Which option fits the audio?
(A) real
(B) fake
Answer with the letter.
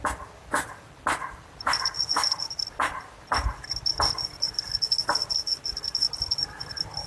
A